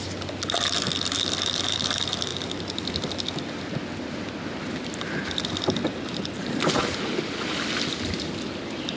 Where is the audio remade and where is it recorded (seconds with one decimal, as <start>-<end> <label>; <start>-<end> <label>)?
0.0-9.0 recorded